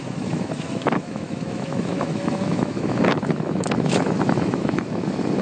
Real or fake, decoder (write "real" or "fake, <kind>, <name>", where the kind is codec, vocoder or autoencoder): fake, autoencoder, DAC-VAE